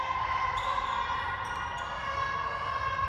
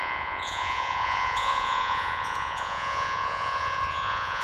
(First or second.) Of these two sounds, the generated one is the second